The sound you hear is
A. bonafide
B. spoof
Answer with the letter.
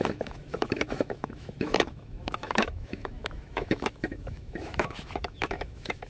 B